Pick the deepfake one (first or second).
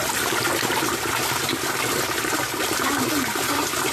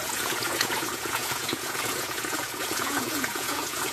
second